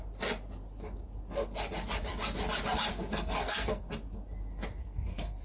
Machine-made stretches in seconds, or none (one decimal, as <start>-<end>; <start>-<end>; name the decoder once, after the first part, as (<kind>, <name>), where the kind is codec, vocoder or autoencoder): 2.9-3.9 (codec, SNAC); 4.8-5.4